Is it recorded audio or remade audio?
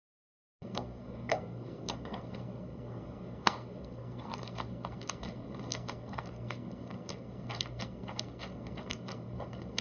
remade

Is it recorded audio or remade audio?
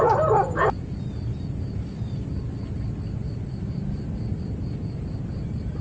recorded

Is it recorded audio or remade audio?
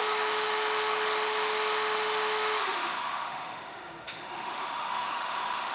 remade